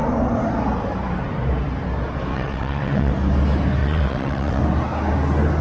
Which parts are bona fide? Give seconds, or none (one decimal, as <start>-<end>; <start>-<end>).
0.0-2.3; 3.1-3.8; 4.6-5.6